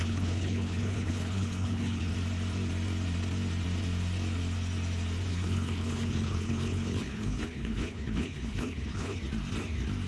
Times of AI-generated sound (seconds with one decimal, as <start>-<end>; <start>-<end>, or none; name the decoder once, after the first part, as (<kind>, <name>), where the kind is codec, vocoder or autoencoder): 0.0-2.1 (codec, HILCodec); 5.3-9.2